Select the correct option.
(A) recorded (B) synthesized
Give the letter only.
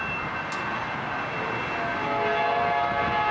A